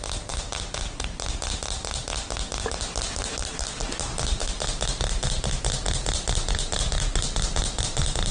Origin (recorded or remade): recorded